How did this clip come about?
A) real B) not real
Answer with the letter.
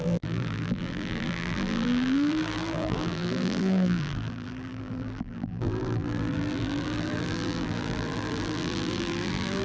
B